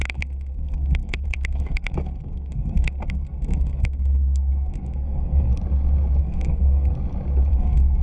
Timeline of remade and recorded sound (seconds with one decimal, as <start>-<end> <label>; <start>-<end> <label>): 0.0-5.5 remade; 5.5-6.2 recorded; 6.2-6.9 remade; 6.9-7.5 recorded; 7.5-8.0 remade